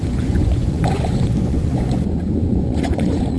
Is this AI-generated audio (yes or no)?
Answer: yes